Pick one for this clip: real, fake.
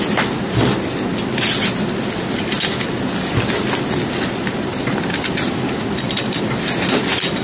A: real